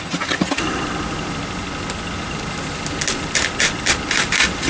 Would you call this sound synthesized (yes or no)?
no